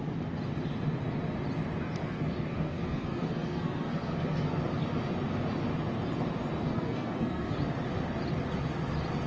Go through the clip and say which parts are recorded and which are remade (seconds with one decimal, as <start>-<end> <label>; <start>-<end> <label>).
0.0-2.0 recorded; 2.0-4.6 remade; 4.6-6.6 recorded; 6.6-7.6 remade; 7.6-9.3 recorded